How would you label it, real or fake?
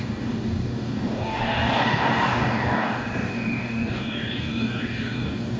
fake